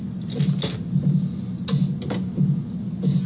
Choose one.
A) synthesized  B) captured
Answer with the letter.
B